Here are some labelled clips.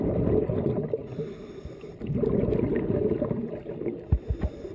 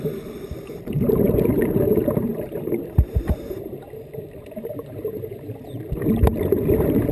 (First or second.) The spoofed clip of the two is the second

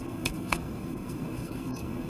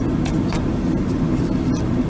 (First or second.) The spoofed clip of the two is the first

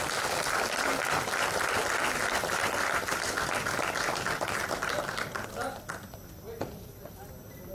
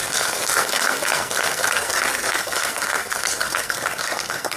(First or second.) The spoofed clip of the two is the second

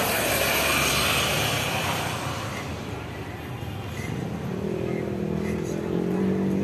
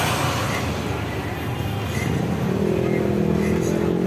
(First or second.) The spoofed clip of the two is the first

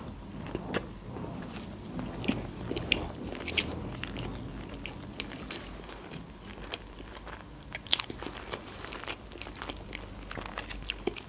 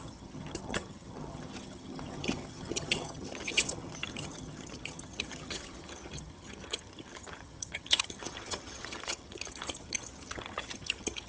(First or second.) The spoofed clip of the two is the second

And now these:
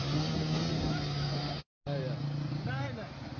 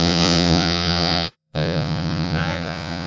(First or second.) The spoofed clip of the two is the second